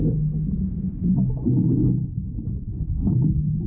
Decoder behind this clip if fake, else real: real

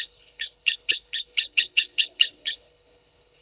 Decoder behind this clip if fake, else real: fake, codec, HILCodec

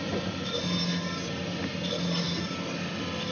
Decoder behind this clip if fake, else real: real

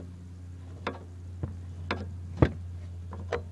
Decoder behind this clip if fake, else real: real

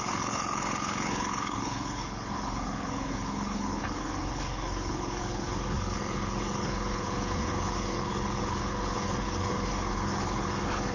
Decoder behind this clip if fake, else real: fake, codec, HILCodec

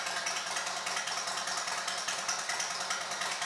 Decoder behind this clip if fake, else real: real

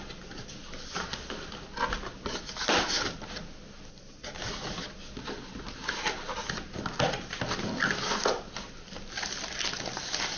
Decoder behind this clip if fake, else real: real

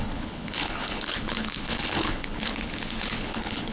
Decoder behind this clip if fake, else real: fake, codec, HILCodec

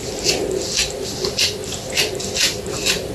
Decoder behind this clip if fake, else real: real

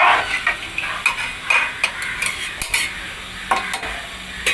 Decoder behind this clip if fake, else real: real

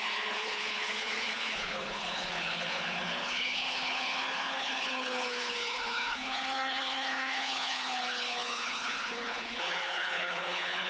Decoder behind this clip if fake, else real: fake, codec, HILCodec